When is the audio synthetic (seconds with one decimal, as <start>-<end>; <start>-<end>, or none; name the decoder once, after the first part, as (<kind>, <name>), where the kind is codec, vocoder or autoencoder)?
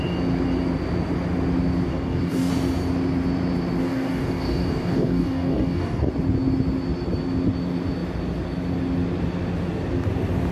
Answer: 1.9-2.5 (codec, DAC); 3.8-6.1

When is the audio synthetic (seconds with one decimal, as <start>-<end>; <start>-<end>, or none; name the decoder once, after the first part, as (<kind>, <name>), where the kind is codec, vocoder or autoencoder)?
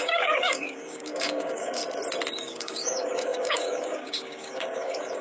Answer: 0.0-1.8 (codec, DAC); 2.3-5.2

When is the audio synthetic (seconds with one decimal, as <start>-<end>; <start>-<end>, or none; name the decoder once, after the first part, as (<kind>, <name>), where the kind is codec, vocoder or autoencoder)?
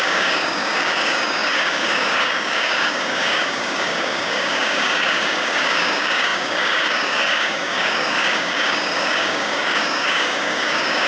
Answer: 0.0-11.1 (codec, DAC)